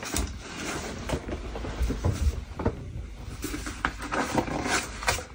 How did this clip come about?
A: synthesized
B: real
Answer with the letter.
B